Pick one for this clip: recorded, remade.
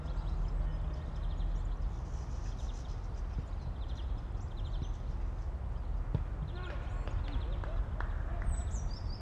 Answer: recorded